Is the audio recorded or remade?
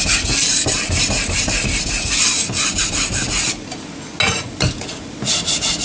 recorded